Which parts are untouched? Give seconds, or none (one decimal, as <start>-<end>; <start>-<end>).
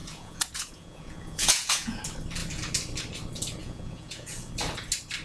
2.0-3.6; 4.5-5.2